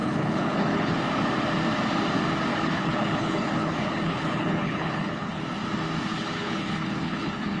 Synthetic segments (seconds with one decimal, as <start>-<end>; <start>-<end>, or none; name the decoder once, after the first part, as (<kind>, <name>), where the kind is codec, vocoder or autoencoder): 0.0-1.0 (codec, HILCodec); 2.5-5.4; 6.1-7.6